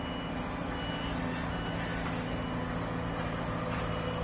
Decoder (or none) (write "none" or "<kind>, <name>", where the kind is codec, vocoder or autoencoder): none